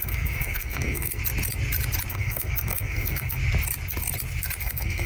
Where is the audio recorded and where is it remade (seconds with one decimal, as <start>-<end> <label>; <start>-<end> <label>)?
0.0-1.2 remade; 1.2-2.1 recorded; 2.1-3.4 remade; 3.4-4.6 recorded; 4.6-5.1 remade